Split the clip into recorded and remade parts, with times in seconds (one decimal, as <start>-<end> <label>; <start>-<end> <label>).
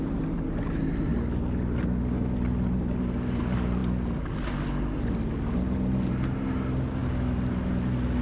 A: 0.0-8.2 recorded